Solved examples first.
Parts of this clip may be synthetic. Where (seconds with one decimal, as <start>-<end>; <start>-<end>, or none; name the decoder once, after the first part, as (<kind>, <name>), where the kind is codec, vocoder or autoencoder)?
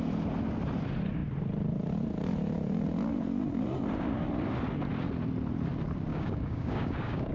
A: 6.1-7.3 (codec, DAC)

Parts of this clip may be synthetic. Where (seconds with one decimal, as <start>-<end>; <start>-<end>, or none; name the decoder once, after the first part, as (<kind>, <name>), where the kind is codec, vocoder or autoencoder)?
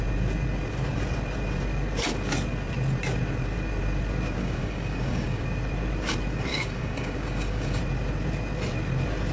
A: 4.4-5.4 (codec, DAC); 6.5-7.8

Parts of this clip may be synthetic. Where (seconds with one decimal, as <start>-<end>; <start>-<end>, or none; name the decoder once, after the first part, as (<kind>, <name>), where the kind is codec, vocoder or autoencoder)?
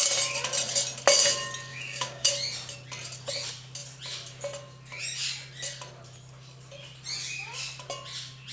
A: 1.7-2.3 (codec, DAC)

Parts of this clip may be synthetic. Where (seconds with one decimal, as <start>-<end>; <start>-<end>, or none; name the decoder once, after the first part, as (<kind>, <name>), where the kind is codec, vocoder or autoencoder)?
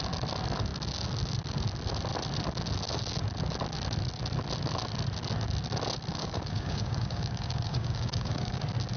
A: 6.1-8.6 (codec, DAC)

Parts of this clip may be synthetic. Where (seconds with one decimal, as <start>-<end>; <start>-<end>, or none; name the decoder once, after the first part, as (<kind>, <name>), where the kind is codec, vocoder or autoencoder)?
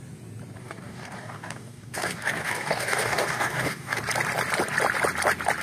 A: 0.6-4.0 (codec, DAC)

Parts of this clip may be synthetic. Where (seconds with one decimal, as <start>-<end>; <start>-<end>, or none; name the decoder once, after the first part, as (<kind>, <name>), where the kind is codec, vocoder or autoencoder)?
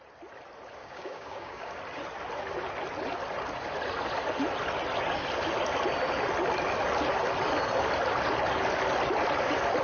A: 0.8-1.8 (codec, DAC)